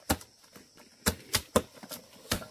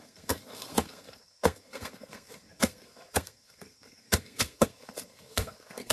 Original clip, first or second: first